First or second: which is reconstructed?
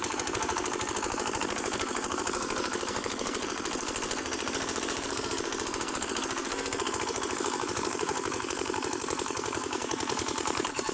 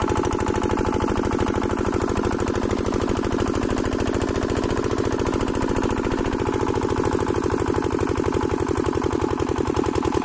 first